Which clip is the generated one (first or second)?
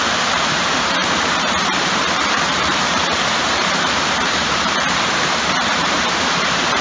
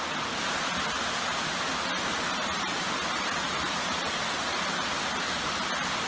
first